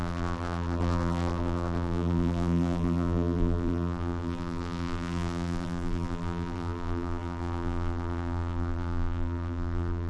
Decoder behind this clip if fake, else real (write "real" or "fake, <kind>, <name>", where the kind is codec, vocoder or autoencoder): fake, vocoder, BigVGAN v2